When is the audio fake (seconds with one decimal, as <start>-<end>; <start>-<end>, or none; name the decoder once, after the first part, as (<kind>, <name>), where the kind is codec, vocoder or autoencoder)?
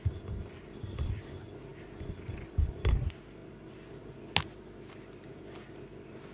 none